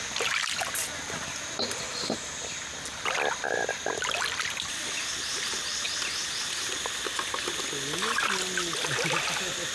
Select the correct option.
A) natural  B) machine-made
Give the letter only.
A